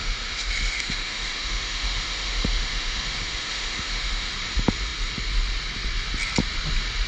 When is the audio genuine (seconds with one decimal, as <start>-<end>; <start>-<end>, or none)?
4.3-7.1

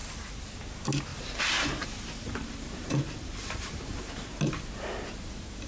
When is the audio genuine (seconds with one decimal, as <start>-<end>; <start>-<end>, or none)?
0.0-1.1; 4.4-5.7

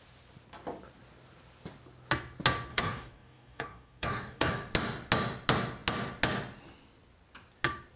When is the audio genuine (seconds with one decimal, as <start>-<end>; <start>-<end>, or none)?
0.0-2.7; 4.5-8.0

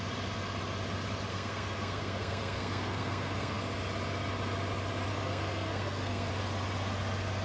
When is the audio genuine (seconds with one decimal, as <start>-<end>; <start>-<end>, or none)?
0.0-1.3; 3.6-5.1; 6.3-7.4

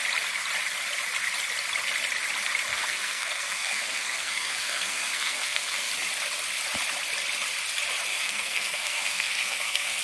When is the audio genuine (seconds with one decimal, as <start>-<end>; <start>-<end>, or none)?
0.0-2.7; 5.9-8.1

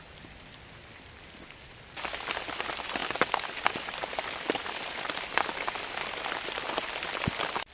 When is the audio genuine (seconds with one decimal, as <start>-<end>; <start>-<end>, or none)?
none

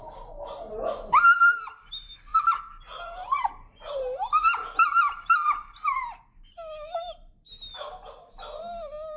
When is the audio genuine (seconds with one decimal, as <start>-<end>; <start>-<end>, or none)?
6.0-8.0